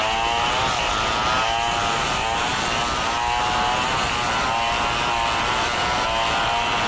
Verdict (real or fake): real